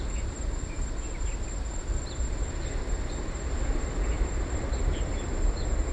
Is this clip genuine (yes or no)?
yes